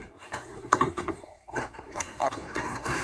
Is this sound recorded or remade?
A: remade